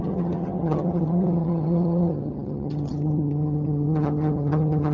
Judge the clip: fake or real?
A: fake